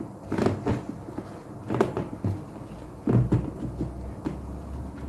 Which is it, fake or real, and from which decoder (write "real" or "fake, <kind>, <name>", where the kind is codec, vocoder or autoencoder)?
real